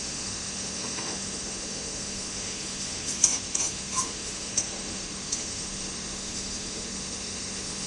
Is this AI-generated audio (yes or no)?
yes